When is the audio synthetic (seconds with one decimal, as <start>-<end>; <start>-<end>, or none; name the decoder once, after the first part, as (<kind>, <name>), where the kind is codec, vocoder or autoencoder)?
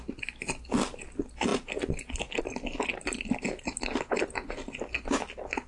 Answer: none